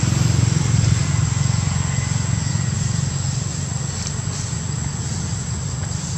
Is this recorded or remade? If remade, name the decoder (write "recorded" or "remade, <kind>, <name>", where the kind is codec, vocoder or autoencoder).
recorded